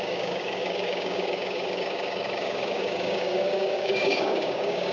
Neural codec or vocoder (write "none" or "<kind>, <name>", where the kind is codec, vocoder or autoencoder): codec, DAC